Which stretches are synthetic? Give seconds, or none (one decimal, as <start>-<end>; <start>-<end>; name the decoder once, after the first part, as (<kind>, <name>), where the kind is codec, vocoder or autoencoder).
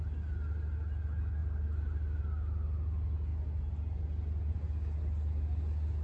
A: none